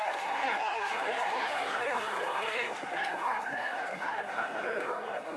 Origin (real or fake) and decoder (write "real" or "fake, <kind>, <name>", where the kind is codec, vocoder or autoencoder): fake, codec, SNAC